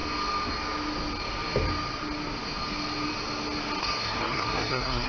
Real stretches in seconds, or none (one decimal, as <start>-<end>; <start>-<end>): 0.0-3.8